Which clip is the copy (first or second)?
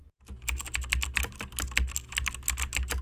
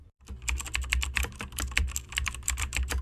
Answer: second